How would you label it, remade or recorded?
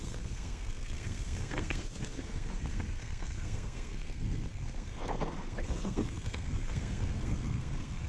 remade